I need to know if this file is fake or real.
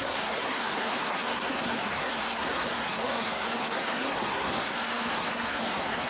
fake